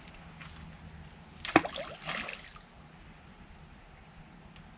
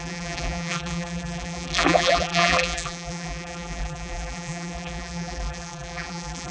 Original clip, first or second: first